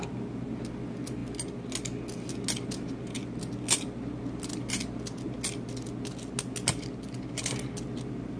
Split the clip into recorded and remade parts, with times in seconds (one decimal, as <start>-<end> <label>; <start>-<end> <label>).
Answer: 0.0-8.4 recorded